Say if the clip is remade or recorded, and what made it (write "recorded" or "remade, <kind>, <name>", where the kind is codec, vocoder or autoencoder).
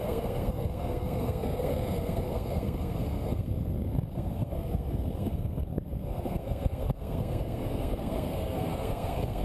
remade, codec, SNAC